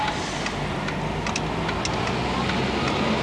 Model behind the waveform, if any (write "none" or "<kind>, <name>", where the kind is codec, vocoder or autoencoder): none